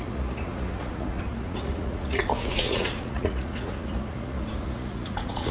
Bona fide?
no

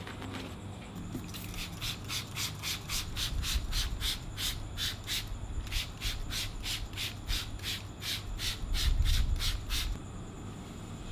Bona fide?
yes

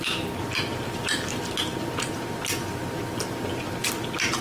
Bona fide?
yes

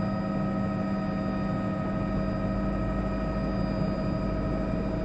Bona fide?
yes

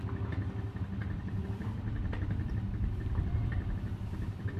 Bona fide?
no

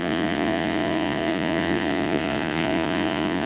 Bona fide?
no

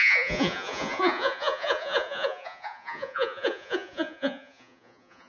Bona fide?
no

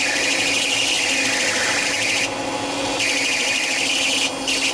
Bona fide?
yes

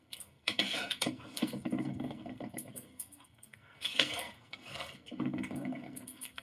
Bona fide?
no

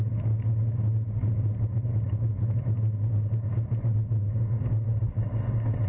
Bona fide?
yes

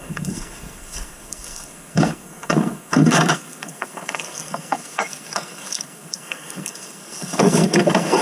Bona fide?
no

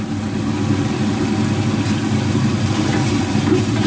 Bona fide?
yes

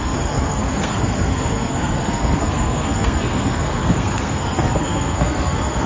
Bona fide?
no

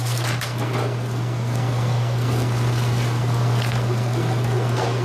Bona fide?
no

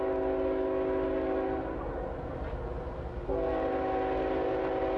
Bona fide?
yes